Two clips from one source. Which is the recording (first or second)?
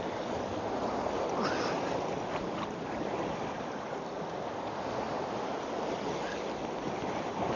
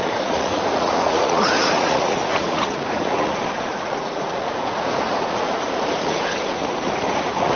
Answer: first